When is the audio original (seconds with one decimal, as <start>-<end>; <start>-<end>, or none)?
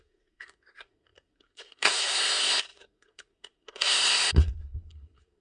none